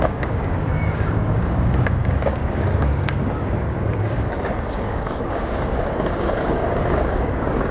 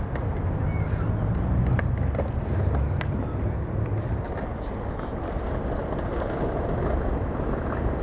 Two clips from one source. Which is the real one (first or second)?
second